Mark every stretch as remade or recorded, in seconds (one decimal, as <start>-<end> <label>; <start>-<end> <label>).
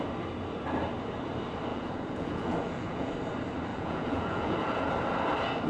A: 0.0-1.7 recorded; 1.7-3.1 remade; 3.1-3.7 recorded; 3.7-4.9 remade; 4.9-5.7 recorded